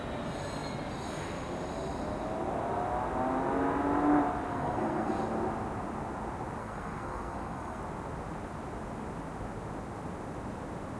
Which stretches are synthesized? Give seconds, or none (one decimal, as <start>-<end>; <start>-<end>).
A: 4.5-5.2; 6.6-7.8